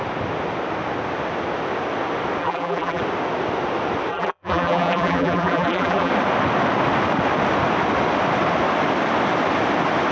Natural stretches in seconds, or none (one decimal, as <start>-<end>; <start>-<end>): 0.0-2.4; 3.0-4.1; 6.1-10.1